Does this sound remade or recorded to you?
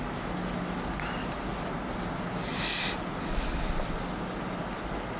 recorded